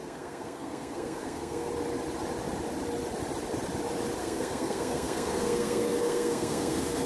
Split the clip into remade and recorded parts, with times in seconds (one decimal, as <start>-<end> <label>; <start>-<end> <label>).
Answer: 0.0-1.7 remade; 1.7-4.2 recorded; 4.2-7.1 remade